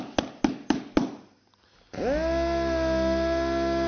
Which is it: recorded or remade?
recorded